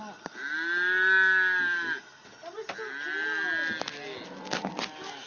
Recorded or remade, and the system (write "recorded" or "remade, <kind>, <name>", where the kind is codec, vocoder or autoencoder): recorded